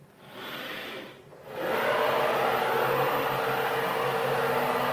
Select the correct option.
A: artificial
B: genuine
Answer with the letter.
B